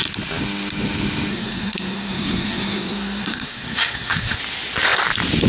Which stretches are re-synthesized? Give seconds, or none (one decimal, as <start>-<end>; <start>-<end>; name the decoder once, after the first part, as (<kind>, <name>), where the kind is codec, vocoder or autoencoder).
1.3-4.4 (codec, SNAC)